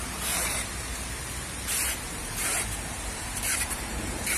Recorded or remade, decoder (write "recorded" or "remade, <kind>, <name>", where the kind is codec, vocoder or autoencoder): remade, vocoder, BigVGAN v2